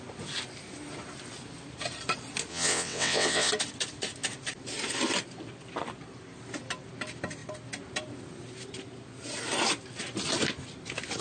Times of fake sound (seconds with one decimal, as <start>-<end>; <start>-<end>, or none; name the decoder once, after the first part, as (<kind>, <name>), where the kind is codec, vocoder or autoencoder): 2.5-3.5 (vocoder, WaveNeXt)